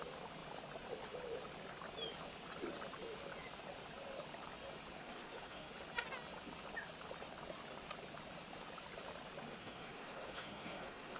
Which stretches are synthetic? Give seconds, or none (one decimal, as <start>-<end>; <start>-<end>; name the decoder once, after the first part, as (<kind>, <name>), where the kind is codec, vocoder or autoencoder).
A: 5.0-5.7 (autoencoder, DAC-VAE); 9.6-11.2